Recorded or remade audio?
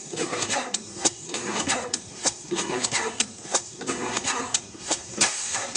remade